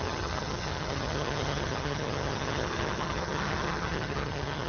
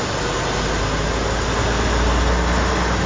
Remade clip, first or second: first